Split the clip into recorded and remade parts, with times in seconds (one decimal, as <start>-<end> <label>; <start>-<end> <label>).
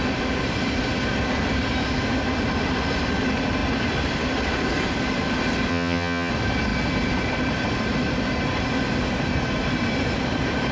0.0-5.7 recorded; 5.7-6.3 remade; 6.3-10.7 recorded